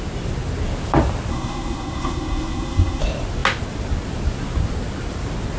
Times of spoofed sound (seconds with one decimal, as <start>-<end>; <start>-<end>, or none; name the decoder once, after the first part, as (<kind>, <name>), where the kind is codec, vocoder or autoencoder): 1.3-3.0 (codec, SNAC)